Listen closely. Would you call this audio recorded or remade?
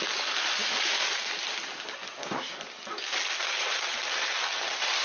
recorded